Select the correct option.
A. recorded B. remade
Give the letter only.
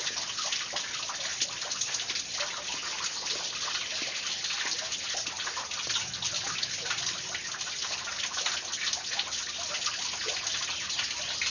A